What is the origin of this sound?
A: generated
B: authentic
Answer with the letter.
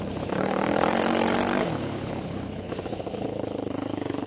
A